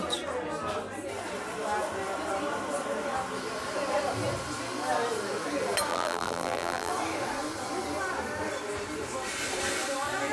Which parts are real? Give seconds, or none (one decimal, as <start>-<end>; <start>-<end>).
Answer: 0.0-5.9; 6.9-10.3